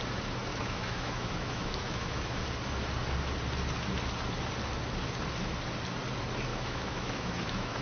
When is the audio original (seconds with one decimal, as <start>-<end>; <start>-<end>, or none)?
0.0-0.5; 2.4-6.5